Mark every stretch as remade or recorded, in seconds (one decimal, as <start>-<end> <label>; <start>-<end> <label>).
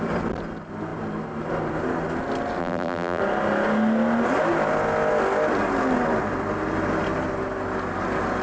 0.0-2.6 recorded; 2.6-3.2 remade; 3.2-8.4 recorded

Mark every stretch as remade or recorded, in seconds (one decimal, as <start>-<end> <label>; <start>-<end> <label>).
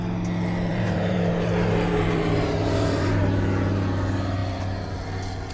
0.0-0.7 recorded; 0.7-3.2 remade; 3.2-5.5 recorded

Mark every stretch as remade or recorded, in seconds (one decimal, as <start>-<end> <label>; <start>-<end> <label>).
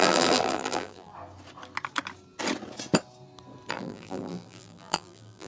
0.0-1.1 remade; 1.1-3.7 recorded; 3.7-5.5 remade